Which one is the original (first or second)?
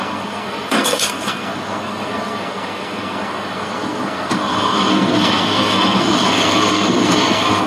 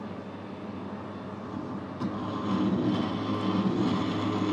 second